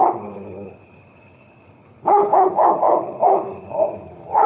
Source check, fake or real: fake